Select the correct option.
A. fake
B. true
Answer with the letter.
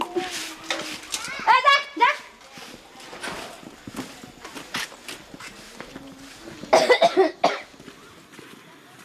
B